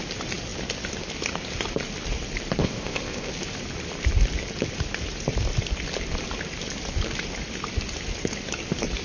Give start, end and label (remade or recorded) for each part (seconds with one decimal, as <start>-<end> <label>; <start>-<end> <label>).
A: 0.0-2.6 recorded; 2.6-3.3 remade; 3.3-9.0 recorded